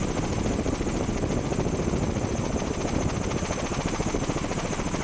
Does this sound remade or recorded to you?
recorded